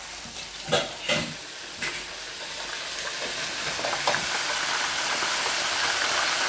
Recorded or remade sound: recorded